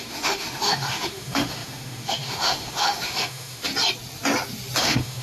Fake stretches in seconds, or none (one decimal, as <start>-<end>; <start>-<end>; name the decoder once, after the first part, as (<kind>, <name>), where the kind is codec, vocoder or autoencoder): 0.0-3.7 (autoencoder, DAC-VAE); 4.8-5.2